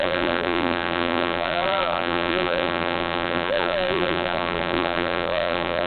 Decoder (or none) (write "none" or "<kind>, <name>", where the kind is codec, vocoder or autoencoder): vocoder, BigVGAN v2